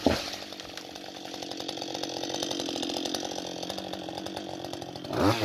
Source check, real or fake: real